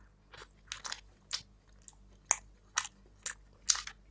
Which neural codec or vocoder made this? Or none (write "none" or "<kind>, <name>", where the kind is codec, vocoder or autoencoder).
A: none